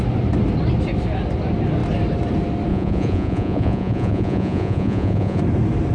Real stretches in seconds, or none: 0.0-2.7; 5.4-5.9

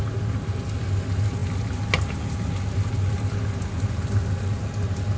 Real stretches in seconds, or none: 0.0-5.2

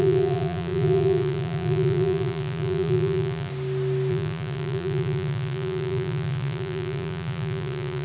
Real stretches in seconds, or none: 3.5-4.1

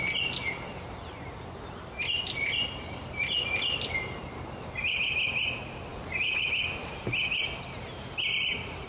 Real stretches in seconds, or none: 0.0-8.9